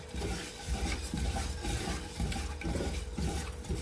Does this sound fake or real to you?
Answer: fake